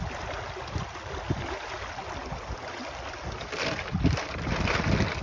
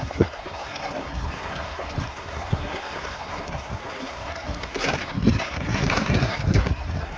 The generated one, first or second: second